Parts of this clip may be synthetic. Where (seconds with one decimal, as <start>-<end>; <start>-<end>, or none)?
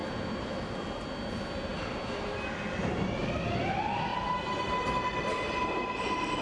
none